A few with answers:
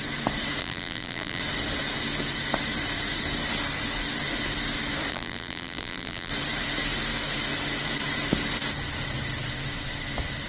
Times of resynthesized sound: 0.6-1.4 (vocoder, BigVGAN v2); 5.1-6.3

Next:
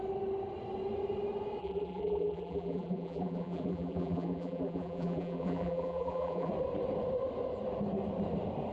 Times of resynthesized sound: 1.6-6.5 (vocoder, BigVGAN v2)

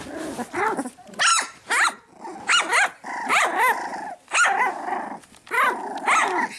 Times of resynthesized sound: 1.3-1.9 (vocoder, BigVGAN v2)

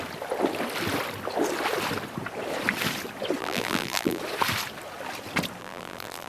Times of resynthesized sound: 3.4-4.2 (vocoder, BigVGAN v2); 5.6-6.3

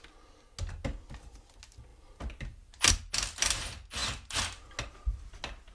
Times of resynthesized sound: none